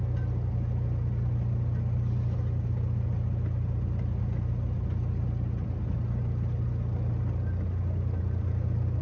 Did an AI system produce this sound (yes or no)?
no